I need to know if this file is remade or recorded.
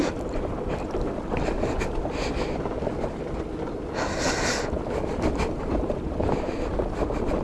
remade